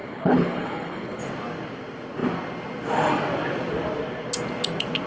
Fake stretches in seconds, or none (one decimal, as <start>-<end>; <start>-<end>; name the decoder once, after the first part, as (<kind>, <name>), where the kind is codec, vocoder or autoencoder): 0.0-1.2 (codec, HILCodec)